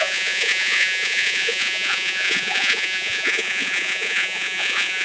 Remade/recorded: remade